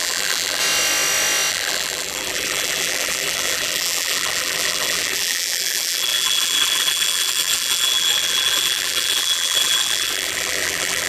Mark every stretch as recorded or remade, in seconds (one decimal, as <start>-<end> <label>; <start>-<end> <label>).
0.0-0.6 remade; 0.6-1.5 recorded; 1.5-11.1 remade